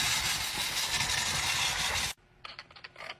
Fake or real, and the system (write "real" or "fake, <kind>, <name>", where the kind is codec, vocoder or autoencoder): real